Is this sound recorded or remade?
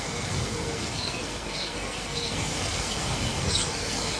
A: remade